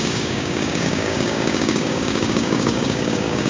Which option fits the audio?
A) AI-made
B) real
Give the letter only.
A